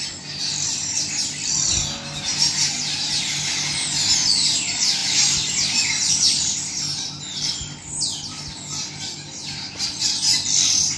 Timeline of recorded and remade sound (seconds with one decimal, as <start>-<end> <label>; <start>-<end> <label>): 0.0-11.0 recorded